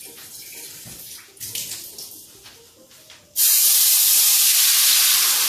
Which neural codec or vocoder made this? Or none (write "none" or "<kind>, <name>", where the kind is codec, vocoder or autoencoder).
none